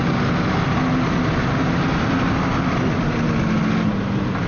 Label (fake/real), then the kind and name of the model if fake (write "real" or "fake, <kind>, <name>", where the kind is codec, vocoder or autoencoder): real